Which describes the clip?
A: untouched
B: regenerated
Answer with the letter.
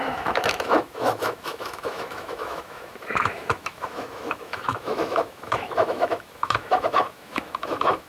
B